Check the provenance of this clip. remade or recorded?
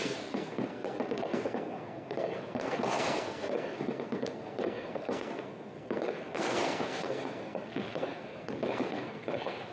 remade